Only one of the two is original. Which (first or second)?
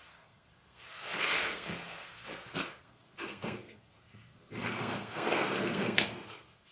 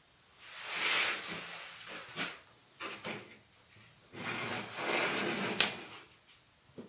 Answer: second